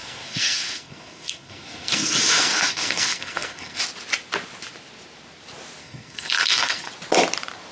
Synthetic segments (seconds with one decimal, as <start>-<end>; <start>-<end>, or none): 0.0-3.8; 5.8-6.9

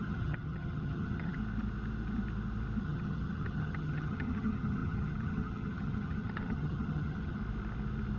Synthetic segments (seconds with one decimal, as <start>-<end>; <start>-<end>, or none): 0.0-1.4; 2.8-7.4